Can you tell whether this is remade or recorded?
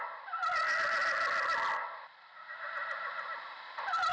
recorded